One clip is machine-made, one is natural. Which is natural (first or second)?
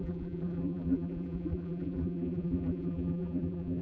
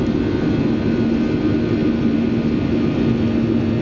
second